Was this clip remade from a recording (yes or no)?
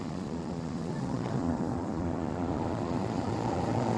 yes